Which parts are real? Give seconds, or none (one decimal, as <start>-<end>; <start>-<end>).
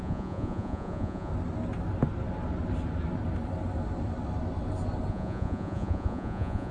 1.3-5.1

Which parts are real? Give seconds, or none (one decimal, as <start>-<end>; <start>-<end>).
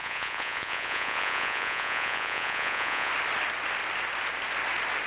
3.1-5.1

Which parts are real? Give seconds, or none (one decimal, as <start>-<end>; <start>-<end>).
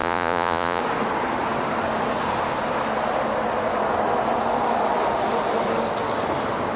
0.8-6.8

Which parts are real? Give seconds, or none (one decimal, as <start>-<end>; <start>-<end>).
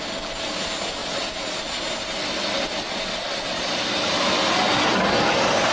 0.0-1.0; 1.8-2.9; 3.7-5.7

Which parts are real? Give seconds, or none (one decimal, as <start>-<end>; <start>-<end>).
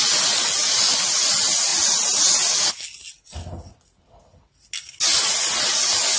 0.0-6.2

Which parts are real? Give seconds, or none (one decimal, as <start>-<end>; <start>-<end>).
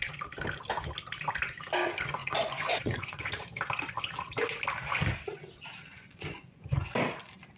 0.0-2.2; 3.3-5.9; 6.9-7.6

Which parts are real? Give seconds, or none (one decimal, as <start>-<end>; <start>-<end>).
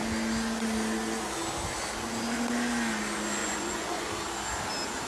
0.0-3.4; 4.1-5.1